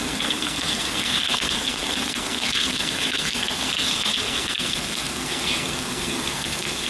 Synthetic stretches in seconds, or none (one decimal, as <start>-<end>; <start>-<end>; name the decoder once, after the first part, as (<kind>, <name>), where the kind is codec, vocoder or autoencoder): 0.0-6.9 (codec, SNAC)